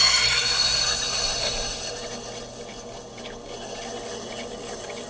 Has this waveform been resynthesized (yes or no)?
no